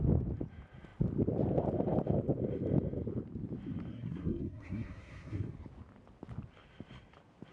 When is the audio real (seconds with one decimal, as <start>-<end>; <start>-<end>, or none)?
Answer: 0.0-3.9; 5.5-7.5